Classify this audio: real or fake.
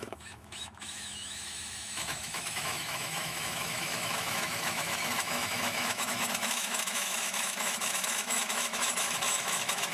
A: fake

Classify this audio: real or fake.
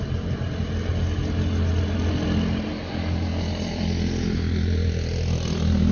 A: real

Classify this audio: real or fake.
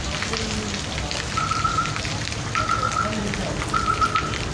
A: real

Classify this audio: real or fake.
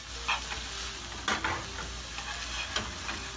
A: real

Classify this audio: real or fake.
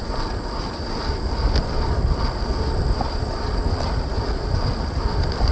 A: real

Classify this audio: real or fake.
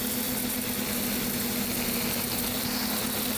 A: real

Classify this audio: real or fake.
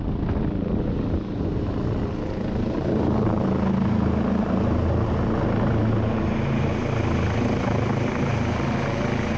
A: real